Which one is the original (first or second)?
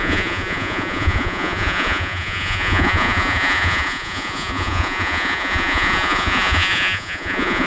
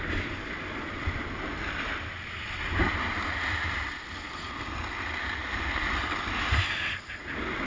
second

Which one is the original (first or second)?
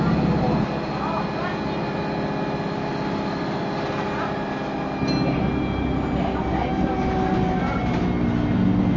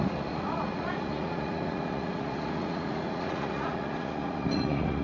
first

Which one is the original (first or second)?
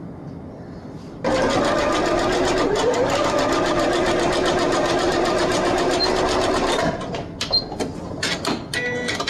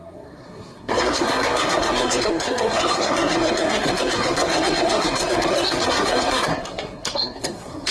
first